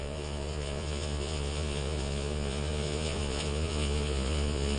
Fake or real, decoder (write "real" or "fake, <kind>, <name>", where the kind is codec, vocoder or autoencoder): fake, vocoder, Vocos